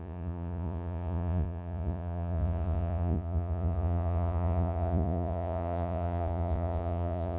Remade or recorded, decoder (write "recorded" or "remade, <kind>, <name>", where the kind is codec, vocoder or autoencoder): remade, vocoder, Vocos